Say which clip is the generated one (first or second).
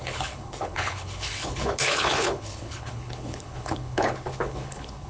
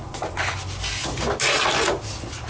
first